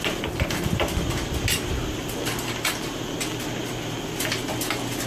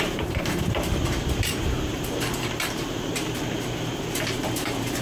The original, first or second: first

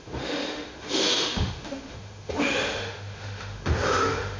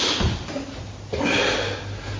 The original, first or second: second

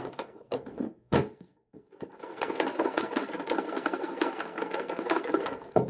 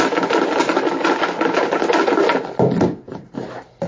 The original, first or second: second